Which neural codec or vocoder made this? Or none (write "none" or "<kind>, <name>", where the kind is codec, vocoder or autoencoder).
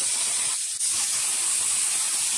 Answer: none